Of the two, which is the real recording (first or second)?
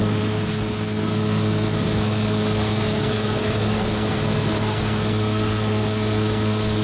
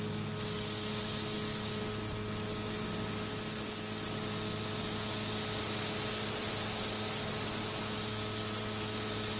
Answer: second